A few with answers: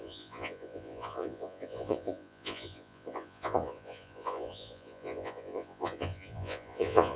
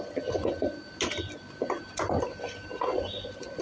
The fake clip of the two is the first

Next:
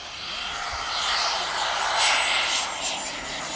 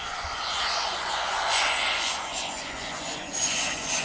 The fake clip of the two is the second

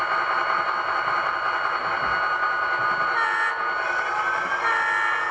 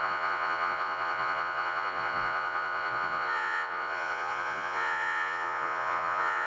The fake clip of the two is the second